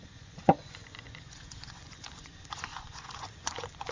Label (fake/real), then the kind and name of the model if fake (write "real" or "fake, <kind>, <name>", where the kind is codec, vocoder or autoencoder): fake, vocoder, Vocos